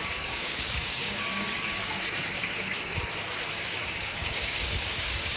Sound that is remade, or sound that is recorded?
remade